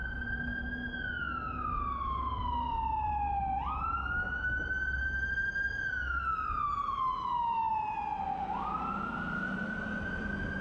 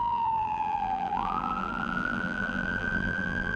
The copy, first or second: second